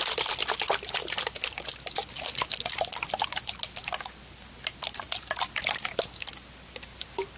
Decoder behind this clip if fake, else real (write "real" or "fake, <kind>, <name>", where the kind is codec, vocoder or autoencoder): real